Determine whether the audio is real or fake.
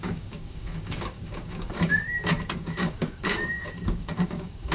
fake